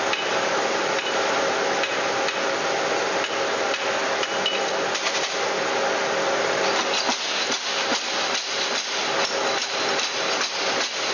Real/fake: real